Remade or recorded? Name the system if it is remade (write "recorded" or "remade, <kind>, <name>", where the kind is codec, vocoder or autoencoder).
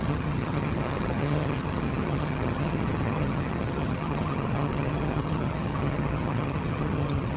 remade, vocoder, HiFi-GAN